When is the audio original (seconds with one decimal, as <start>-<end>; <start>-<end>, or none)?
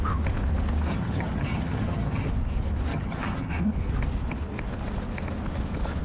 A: 0.0-0.9; 2.3-2.9; 3.5-6.0